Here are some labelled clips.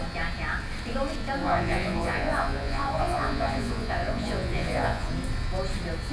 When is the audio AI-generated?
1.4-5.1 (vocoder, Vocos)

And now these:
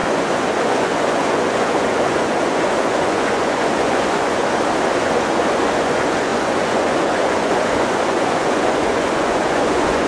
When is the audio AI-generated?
0.0-4.4 (vocoder, Vocos); 4.9-10.1

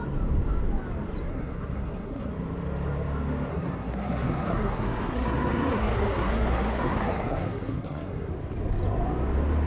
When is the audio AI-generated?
1.3-2.3 (codec, SNAC); 3.5-8.3

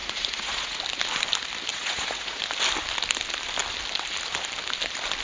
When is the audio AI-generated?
0.0-0.8 (vocoder, Vocos); 1.7-2.4

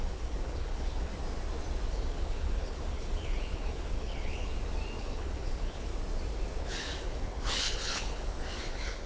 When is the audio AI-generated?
0.0-1.1 (codec, HILCodec); 1.9-4.5; 5.0-5.9; 6.6-8.2; 8.7-9.1